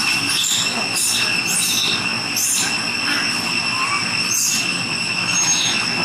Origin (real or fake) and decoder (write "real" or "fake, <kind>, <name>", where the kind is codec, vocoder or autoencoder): real